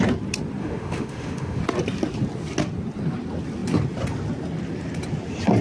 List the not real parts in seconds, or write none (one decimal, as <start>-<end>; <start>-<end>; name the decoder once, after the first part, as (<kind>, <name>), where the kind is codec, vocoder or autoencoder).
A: 0.6-1.6 (autoencoder, DAC-VAE)